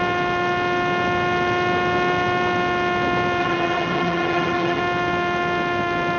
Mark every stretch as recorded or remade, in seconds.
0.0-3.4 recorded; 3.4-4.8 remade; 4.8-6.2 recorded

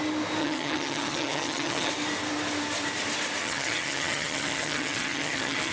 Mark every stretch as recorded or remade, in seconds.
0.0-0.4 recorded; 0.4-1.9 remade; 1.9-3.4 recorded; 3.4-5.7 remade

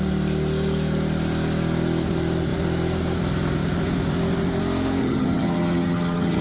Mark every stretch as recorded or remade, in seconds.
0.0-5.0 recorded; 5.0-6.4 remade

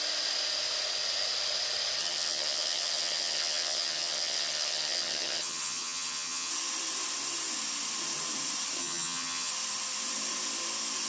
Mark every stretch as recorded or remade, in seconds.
0.0-2.0 recorded; 2.0-6.5 remade; 6.5-8.8 recorded; 8.8-9.5 remade; 9.5-11.1 recorded